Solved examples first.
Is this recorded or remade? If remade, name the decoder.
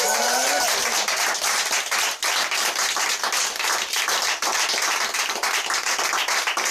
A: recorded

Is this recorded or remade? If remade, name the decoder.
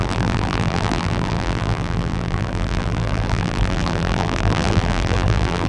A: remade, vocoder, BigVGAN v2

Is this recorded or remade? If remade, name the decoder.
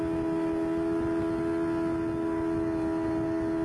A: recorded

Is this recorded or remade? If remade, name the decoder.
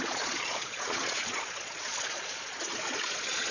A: remade, vocoder, Vocos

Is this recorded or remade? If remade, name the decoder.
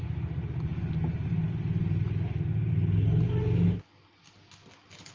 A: recorded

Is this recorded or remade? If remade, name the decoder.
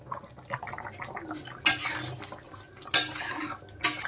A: recorded